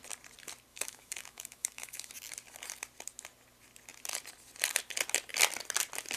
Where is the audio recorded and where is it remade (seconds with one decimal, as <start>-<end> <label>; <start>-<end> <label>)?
0.0-0.7 recorded; 0.7-2.1 remade; 2.1-6.2 recorded